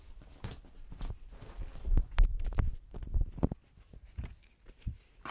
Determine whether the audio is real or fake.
real